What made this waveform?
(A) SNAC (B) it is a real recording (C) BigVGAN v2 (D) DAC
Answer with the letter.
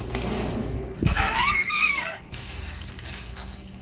A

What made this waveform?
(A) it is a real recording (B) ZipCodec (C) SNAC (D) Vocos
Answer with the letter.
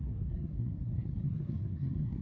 C